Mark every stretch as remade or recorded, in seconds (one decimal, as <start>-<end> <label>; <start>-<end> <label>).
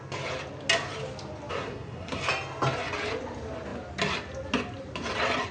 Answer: 0.0-1.5 recorded; 1.5-2.2 remade; 2.2-5.5 recorded